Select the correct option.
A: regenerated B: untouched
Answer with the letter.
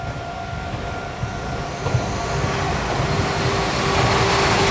B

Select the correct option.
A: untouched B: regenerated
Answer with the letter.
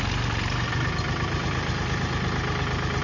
A